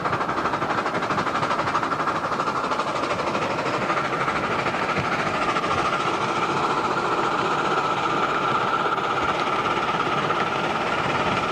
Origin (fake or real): real